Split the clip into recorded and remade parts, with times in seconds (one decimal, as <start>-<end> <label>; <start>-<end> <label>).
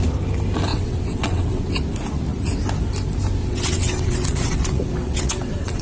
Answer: 0.0-0.7 recorded; 0.7-1.7 remade; 1.7-3.4 recorded; 3.4-5.8 remade